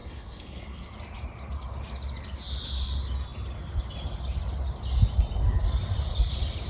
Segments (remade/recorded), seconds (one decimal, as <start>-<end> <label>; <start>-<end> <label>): 0.0-0.9 remade; 0.9-6.7 recorded